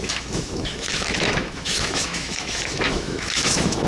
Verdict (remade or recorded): remade